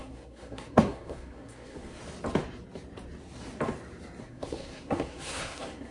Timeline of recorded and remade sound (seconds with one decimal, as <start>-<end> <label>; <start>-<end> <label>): 0.0-2.0 remade; 2.0-4.2 recorded; 4.2-5.9 remade